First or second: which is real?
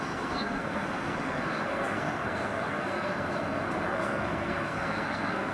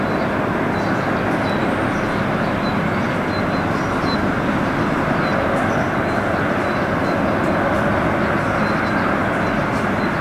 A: second